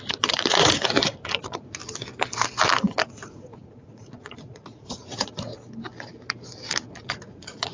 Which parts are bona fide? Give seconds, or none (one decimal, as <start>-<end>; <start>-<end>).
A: 1.8-3.1; 5.5-7.0